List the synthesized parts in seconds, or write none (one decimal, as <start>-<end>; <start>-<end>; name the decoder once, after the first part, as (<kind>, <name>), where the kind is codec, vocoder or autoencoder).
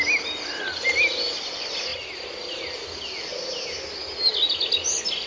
none